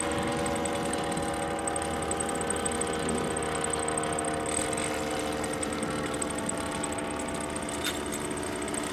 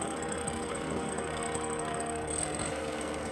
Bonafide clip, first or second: first